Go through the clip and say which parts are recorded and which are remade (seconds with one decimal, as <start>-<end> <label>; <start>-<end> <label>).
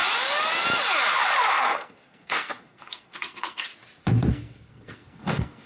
0.0-1.5 recorded; 1.5-3.7 remade; 3.7-4.3 recorded; 4.3-5.7 remade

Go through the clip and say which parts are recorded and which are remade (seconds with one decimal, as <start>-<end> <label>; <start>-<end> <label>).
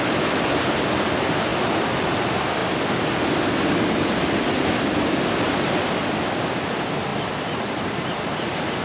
0.0-1.5 recorded; 1.5-2.1 remade; 2.1-8.8 recorded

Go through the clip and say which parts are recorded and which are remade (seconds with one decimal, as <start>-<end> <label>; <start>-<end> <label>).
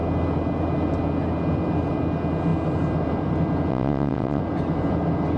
0.0-3.7 recorded; 3.7-4.4 remade; 4.4-5.4 recorded